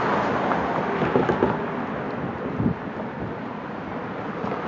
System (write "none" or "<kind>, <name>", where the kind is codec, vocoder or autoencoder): none